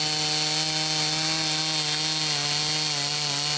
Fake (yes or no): no